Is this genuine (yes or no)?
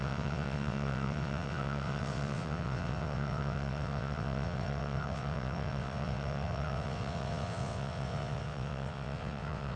no